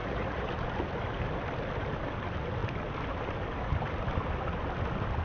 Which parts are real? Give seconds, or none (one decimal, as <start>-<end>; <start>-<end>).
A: 0.5-5.2